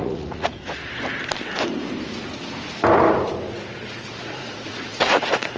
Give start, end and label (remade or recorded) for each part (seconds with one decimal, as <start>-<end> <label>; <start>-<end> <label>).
0.0-0.8 remade; 0.8-4.0 recorded; 4.0-5.6 remade